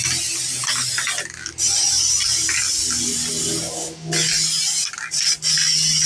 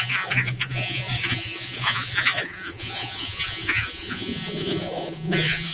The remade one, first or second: second